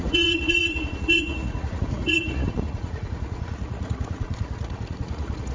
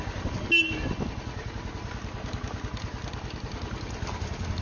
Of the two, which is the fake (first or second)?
first